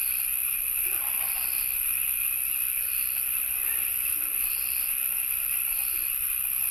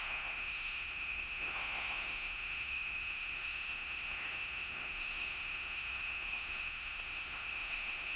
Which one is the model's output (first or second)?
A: second